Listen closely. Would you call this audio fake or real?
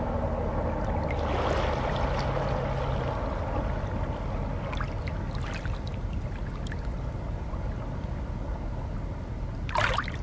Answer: real